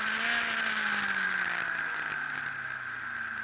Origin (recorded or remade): recorded